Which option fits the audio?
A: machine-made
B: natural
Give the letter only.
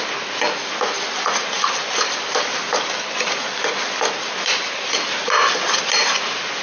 B